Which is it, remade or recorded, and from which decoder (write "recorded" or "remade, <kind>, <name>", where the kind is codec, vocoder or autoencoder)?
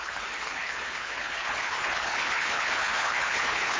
remade, codec, HILCodec